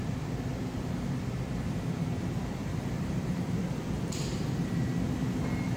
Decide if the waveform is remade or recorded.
remade